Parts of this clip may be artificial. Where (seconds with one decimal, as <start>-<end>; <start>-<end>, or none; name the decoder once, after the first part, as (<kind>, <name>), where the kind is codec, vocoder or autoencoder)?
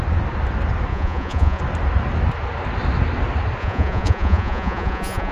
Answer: 0.9-1.6 (vocoder, Vocos); 3.6-5.3